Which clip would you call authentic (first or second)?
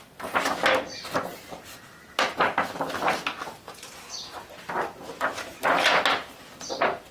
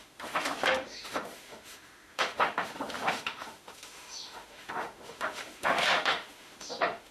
first